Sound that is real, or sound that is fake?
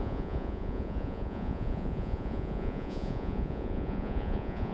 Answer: fake